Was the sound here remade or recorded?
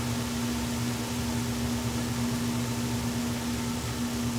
recorded